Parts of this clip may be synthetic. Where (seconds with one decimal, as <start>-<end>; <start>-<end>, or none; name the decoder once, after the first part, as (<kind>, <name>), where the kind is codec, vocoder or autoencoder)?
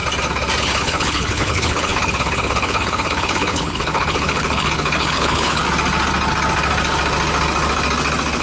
0.6-5.6 (codec, HILCodec)